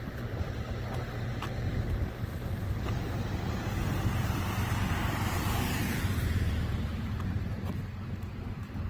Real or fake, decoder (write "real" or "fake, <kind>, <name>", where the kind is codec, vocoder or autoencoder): fake, vocoder, BigVGAN v2